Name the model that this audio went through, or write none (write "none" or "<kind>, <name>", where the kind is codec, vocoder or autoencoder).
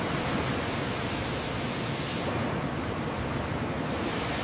none